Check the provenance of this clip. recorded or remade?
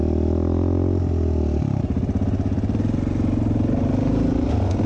recorded